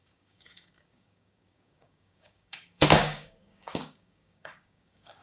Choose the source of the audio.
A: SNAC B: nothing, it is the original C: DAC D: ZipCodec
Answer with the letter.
C